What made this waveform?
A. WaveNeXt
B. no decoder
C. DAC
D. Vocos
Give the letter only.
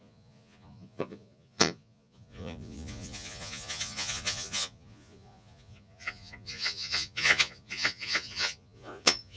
D